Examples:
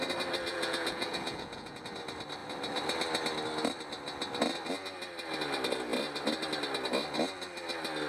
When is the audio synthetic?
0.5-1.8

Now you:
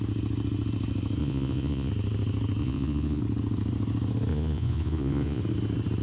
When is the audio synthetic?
1.2-1.9; 2.6-3.2; 4.3-5.4

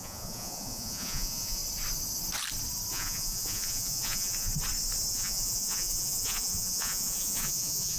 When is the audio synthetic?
0.0-1.6; 2.9-4.5; 5.1-8.0